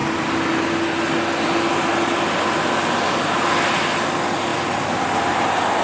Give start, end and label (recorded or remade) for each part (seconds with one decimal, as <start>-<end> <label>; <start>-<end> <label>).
0.0-5.8 recorded